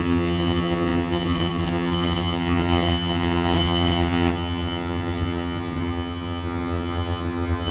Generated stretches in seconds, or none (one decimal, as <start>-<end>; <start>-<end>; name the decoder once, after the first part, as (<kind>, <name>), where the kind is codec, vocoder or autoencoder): 0.0-7.7 (vocoder, HiFi-GAN)